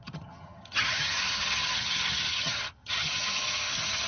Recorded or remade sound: remade